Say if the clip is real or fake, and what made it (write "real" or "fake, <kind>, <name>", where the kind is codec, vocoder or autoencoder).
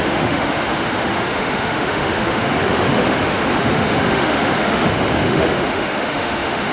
fake, autoencoder, DAC-VAE